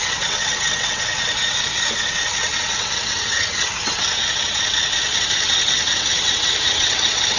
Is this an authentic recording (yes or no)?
no